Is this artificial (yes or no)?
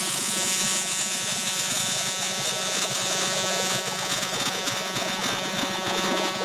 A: yes